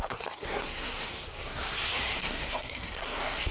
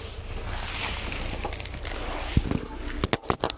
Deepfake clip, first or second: first